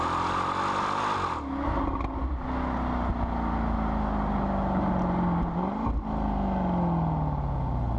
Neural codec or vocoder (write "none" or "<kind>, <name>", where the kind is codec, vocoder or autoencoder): none